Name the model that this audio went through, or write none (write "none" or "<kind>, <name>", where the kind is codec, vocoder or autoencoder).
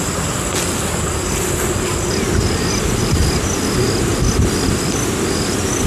none